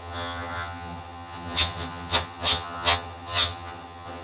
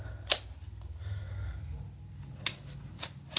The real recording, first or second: second